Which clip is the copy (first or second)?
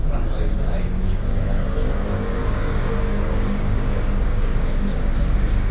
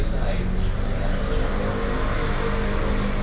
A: first